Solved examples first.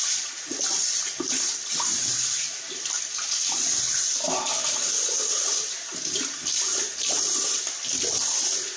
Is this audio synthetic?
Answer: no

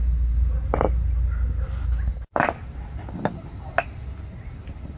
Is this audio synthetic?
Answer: no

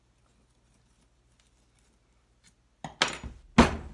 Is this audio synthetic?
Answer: no